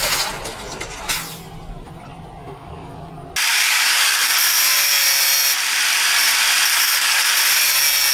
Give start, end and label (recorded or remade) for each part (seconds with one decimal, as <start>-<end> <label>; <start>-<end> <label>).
0.0-2.4 recorded; 2.4-3.1 remade; 3.1-3.5 recorded; 3.5-4.3 remade; 4.3-6.7 recorded; 6.7-7.3 remade; 7.3-8.1 recorded